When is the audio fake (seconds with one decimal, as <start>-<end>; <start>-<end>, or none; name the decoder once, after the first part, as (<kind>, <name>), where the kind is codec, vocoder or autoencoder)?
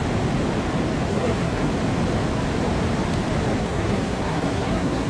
1.1-1.7 (codec, SNAC); 3.6-5.1